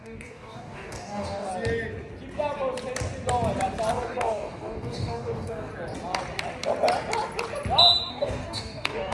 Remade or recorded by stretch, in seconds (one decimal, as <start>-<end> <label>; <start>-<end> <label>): 0.0-1.5 remade; 1.5-3.9 recorded; 3.9-5.7 remade; 5.7-8.1 recorded; 8.1-9.1 remade